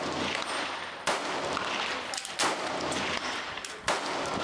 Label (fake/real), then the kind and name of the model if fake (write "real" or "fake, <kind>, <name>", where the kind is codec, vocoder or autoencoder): real